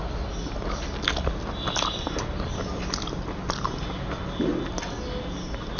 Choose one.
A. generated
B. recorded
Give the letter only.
B